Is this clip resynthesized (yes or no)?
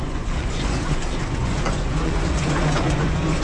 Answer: yes